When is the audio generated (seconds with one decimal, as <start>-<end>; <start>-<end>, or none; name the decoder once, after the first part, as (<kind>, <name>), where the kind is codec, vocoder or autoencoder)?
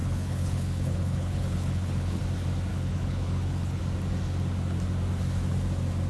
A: 0.0-2.2 (codec, HILCodec); 2.7-3.8